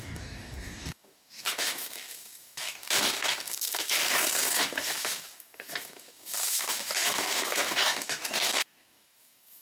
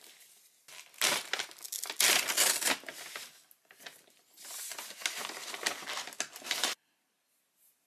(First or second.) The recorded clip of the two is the second